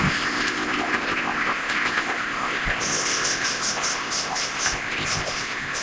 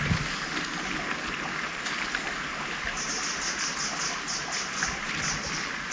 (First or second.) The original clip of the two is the second